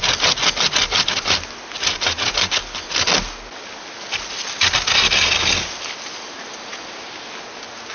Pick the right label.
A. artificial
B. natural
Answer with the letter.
B